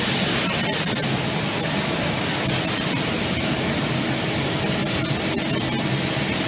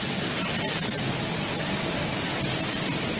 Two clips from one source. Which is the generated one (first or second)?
second